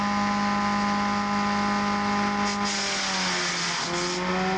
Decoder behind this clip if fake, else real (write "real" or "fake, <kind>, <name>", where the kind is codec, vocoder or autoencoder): real